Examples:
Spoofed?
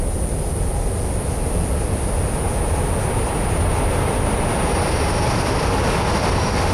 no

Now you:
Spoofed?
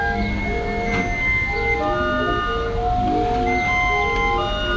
no